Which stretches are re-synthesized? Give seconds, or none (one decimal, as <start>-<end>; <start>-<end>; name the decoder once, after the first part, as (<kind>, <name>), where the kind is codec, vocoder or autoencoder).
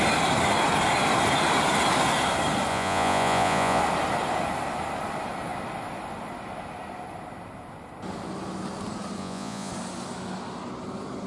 2.7-3.8 (vocoder, Vocos); 9.2-9.7